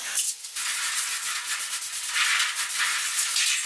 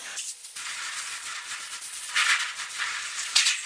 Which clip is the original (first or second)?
first